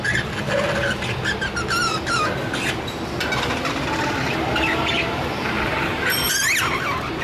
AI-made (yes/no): no